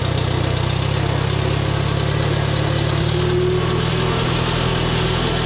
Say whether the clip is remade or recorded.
recorded